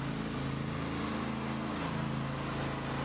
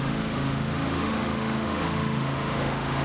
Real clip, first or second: first